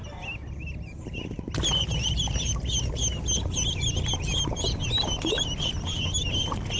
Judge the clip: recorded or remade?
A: recorded